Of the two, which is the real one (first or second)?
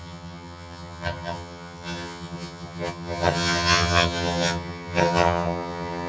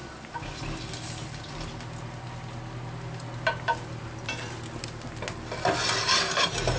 second